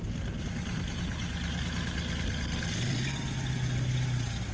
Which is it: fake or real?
real